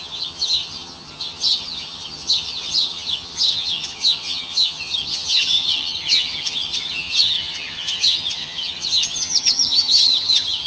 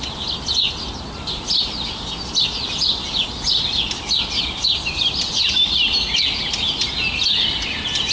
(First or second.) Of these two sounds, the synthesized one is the first